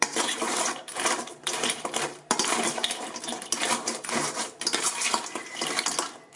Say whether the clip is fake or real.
fake